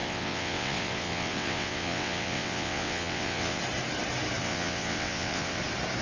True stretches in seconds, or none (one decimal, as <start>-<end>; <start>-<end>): 3.6-4.4; 5.6-6.0